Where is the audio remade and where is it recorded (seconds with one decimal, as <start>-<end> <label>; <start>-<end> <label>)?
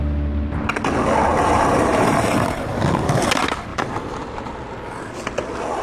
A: 0.0-1.3 recorded; 1.3-2.7 remade; 2.7-3.7 recorded; 3.7-4.4 remade; 4.4-5.8 recorded